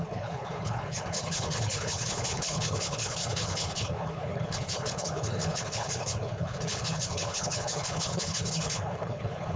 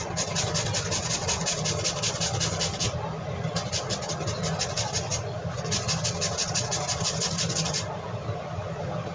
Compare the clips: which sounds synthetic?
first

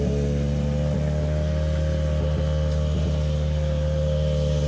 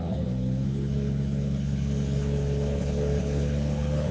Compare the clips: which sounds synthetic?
second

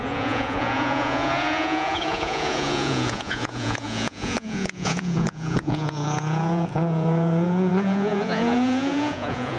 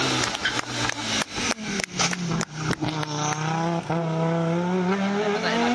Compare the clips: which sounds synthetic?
first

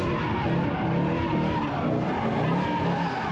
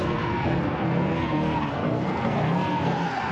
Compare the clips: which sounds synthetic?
second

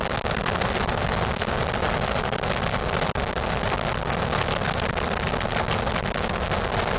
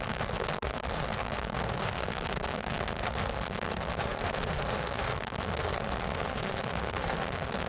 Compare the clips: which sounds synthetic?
second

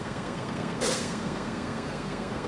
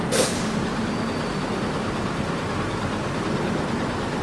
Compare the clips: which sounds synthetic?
first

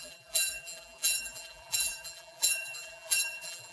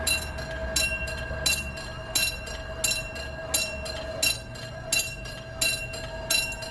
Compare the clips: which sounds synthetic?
first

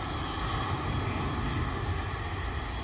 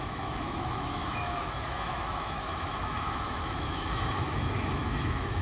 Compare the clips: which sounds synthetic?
second